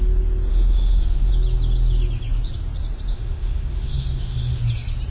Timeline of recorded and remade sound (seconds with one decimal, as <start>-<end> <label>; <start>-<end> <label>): 0.0-0.5 recorded; 0.5-1.3 remade; 1.3-3.1 recorded; 3.1-4.6 remade; 4.6-5.1 recorded